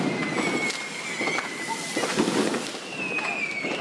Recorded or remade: recorded